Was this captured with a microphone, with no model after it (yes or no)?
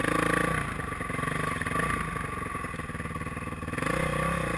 yes